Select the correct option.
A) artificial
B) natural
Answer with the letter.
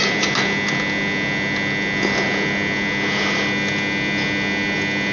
B